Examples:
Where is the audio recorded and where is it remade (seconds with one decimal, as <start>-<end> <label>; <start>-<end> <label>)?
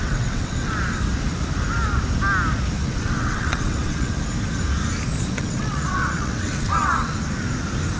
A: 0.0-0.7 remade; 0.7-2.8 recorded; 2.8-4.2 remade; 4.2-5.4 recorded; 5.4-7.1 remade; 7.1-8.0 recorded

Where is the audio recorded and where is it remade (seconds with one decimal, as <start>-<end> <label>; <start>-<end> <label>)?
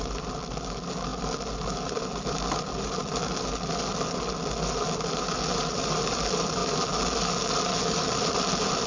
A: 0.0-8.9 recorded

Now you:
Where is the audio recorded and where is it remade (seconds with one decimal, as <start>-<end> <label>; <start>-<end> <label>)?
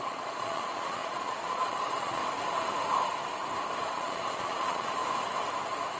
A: 0.0-2.2 remade; 2.2-3.9 recorded; 3.9-5.0 remade; 5.0-6.0 recorded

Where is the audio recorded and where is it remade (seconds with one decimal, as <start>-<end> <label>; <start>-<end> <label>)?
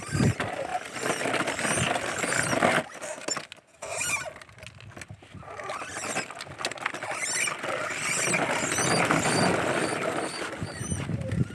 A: 0.0-11.5 recorded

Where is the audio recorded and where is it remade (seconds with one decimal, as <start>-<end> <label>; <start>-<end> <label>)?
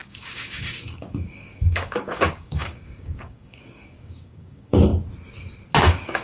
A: 0.0-4.9 remade; 4.9-5.8 recorded; 5.8-6.2 remade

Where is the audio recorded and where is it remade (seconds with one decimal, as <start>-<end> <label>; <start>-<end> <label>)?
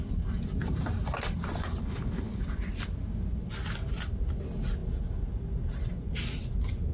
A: 0.0-1.8 recorded; 1.8-2.4 remade; 2.4-6.9 recorded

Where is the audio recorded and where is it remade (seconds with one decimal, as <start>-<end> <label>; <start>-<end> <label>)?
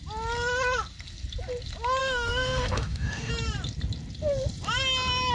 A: 0.0-2.0 recorded; 2.0-3.3 remade; 3.3-5.3 recorded